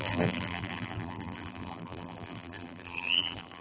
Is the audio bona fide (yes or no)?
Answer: no